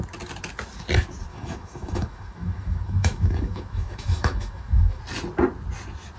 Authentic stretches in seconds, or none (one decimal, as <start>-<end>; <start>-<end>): 0.0-1.3; 5.0-6.2